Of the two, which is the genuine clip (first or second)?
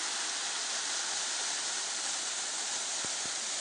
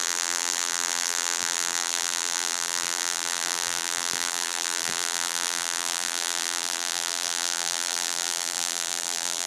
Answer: first